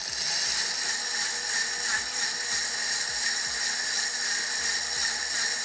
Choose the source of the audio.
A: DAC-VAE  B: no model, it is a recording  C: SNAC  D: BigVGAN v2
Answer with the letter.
B